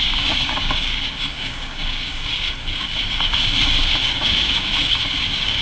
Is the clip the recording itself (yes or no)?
no